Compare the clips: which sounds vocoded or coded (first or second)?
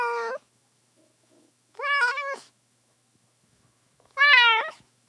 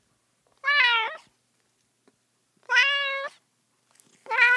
first